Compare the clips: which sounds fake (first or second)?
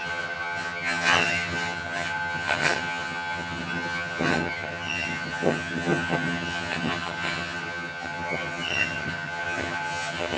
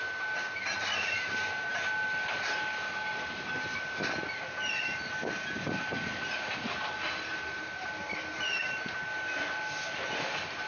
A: first